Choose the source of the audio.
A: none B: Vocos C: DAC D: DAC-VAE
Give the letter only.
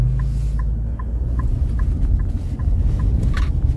A